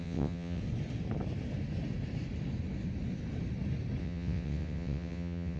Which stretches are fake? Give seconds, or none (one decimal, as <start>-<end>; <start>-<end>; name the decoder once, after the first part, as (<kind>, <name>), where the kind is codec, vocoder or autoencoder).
0.0-0.6 (vocoder, WaveNeXt); 4.0-5.6